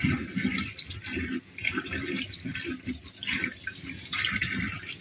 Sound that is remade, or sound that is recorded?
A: recorded